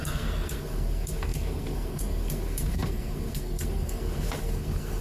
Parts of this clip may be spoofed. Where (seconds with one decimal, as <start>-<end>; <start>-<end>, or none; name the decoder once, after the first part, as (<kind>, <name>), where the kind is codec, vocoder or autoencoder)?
0.0-5.0 (codec, SNAC)